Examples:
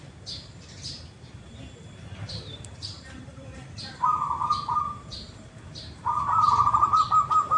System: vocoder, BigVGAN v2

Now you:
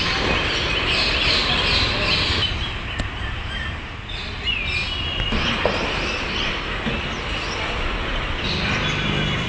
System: none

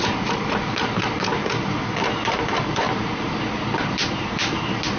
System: vocoder, BigVGAN v2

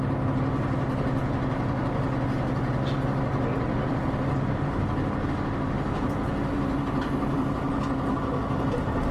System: none